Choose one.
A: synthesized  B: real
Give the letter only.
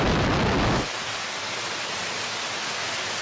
B